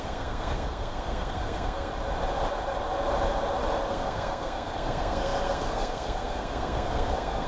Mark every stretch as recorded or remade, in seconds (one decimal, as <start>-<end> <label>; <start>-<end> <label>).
0.0-1.9 remade; 1.9-3.9 recorded; 3.9-7.5 remade